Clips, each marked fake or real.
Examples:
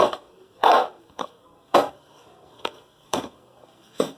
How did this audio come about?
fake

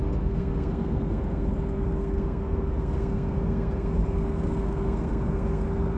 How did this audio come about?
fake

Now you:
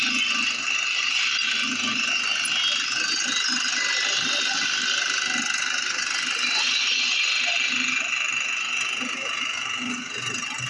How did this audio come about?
real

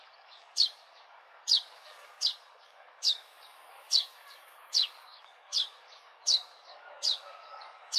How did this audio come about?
fake